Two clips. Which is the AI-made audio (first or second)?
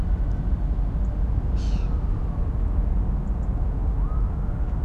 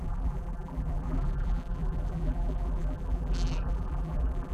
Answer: second